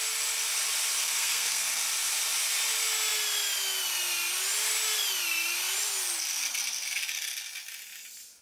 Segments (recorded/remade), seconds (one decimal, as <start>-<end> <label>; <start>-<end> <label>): 0.0-1.0 recorded; 1.0-1.9 remade; 1.9-8.4 recorded